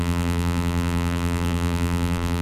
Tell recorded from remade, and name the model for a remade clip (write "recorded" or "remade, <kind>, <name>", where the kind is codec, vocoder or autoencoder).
remade, vocoder, BigVGAN v2